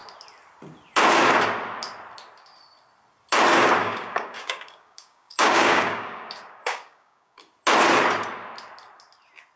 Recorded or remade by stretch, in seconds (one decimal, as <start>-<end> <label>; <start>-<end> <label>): 0.0-3.8 recorded; 3.8-7.4 remade; 7.4-9.6 recorded